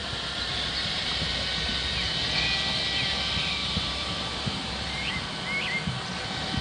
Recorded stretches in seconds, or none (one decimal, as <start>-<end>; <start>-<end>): 1.7-3.6; 5.1-6.6